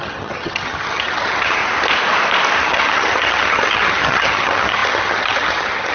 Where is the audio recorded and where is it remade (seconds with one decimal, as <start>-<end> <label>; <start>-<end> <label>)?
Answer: 0.0-1.6 remade; 1.6-2.6 recorded; 2.6-5.9 remade